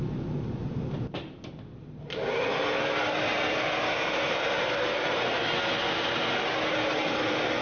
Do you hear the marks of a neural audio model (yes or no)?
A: no